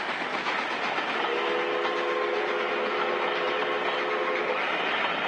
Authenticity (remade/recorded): recorded